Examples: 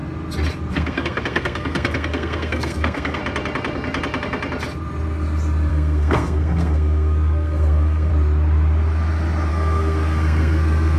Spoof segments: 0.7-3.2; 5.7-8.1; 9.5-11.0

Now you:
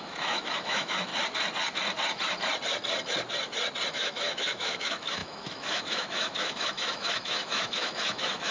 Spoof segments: 0.0-1.1; 3.9-8.5